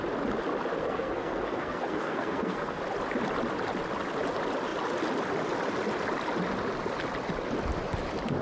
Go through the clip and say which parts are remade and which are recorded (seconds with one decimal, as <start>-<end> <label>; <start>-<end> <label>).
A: 0.0-0.8 recorded; 0.8-2.8 remade; 2.8-8.4 recorded